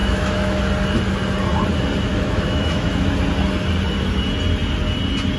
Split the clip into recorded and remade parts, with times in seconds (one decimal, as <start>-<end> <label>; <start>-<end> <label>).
0.0-0.6 remade; 0.6-2.1 recorded; 2.1-3.1 remade; 3.1-5.4 recorded